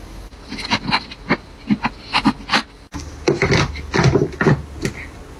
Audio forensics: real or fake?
real